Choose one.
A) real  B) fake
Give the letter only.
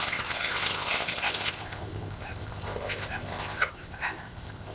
B